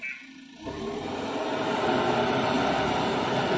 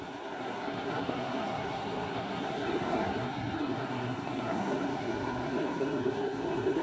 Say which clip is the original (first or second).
first